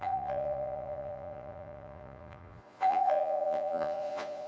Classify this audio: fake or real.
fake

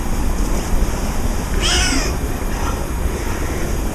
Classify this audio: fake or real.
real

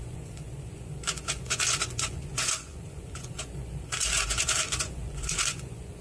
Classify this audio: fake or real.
fake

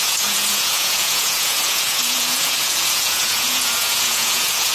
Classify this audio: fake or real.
fake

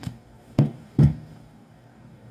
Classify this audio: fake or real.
fake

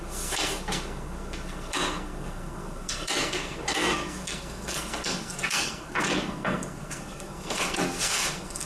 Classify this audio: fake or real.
fake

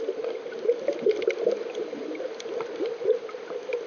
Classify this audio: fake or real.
real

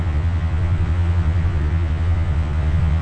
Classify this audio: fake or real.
fake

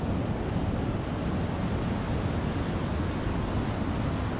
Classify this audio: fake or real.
real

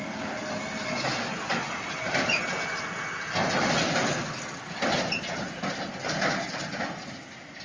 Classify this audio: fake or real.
real